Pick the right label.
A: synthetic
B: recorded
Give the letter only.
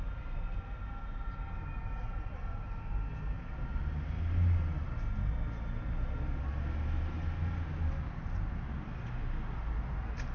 B